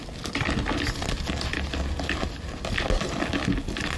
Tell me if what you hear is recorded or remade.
recorded